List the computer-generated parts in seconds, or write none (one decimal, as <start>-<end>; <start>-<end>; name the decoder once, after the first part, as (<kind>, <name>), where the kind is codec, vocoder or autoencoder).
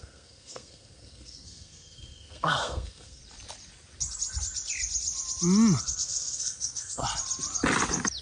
0.0-3.2 (codec, SNAC); 5.8-7.0